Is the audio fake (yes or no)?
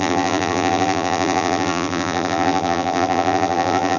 yes